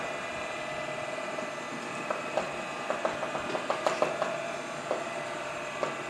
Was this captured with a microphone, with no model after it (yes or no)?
yes